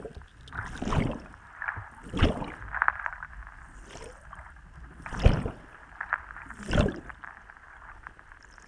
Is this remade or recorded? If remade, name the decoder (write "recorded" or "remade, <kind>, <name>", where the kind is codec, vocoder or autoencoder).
recorded